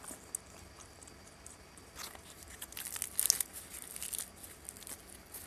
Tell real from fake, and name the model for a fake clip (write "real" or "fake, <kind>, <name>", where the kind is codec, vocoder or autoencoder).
real